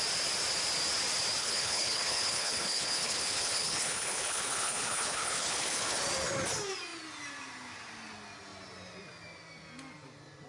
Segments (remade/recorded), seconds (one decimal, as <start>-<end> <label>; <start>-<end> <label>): 0.0-1.4 recorded; 1.4-6.0 remade; 6.0-10.5 recorded